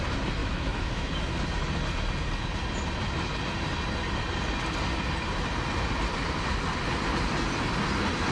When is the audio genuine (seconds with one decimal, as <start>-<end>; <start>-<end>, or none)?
0.0-0.4; 1.1-8.3